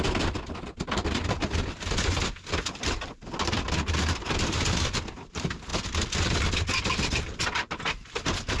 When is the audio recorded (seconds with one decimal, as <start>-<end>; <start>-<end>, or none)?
0.0-8.6